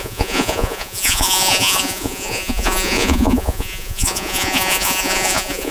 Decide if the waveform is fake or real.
fake